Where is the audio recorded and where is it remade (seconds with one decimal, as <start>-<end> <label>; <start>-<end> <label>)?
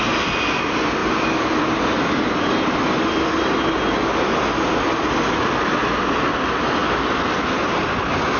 0.0-8.4 recorded